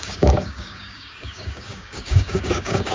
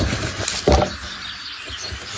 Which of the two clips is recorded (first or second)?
second